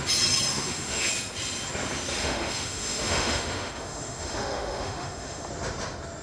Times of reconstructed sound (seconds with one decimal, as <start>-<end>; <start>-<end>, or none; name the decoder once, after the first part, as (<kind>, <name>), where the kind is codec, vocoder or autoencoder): 0.5-1.1 (autoencoder, DAC-VAE); 2.2-5.5